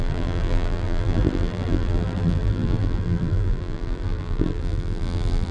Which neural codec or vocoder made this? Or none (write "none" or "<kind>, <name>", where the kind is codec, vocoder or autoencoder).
vocoder, BigVGAN v2